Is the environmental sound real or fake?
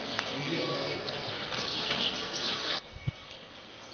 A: fake